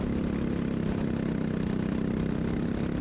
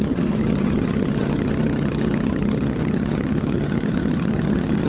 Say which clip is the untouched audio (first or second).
first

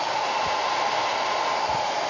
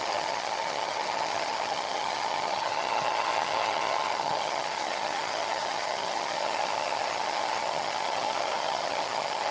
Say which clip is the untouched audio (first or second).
first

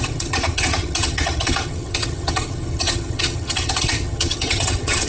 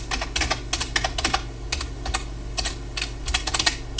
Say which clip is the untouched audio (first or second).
second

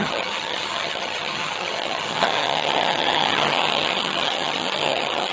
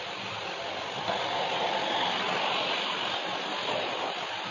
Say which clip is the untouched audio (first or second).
second